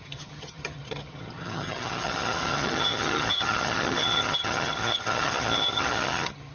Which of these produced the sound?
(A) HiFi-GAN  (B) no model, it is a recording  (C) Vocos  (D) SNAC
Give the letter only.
A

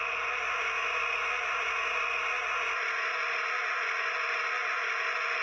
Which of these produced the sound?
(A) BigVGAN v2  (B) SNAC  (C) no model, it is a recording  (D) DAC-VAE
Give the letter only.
C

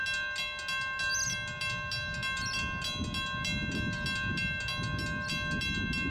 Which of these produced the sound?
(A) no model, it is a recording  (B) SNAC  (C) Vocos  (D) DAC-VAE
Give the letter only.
A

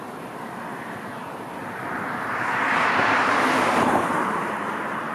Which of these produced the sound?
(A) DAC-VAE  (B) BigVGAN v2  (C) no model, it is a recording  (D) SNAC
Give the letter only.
B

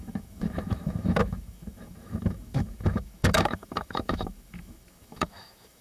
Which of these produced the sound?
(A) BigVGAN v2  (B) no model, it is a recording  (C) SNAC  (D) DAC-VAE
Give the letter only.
D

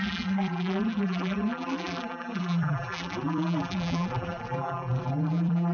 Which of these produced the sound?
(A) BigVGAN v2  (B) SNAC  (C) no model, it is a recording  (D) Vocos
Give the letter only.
A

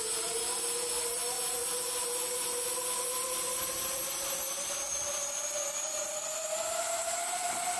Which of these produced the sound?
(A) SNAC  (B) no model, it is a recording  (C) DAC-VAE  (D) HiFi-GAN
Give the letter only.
B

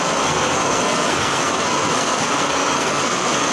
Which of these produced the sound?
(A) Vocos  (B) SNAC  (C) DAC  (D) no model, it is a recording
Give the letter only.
B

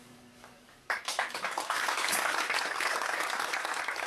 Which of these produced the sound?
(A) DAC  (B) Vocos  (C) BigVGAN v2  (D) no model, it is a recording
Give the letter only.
A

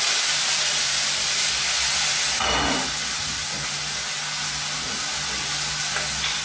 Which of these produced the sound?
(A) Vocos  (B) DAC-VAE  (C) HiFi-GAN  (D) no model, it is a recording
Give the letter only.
D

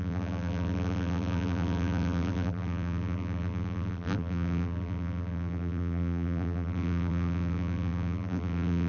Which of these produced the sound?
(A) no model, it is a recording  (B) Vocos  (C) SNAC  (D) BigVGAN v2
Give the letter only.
D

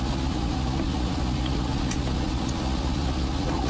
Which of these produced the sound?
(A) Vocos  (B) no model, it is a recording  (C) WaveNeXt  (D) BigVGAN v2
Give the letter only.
A